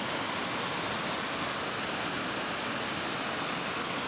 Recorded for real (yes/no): yes